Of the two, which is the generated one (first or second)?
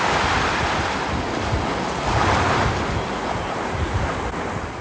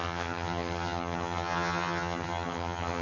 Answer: second